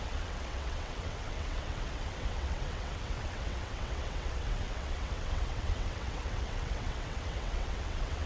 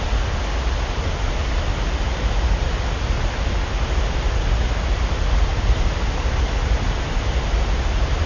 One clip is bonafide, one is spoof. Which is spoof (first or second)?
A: first